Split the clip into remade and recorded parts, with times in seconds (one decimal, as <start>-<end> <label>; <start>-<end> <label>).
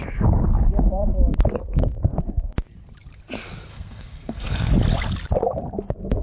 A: 0.0-3.7 recorded; 3.7-4.7 remade; 4.7-6.2 recorded